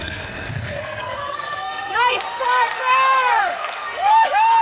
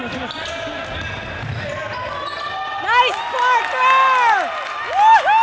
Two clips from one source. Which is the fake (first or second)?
first